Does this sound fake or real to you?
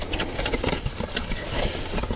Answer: fake